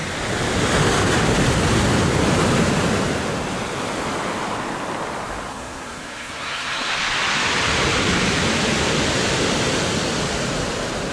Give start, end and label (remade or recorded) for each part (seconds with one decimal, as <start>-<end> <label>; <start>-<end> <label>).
0.0-5.5 recorded; 5.5-6.9 remade; 6.9-11.1 recorded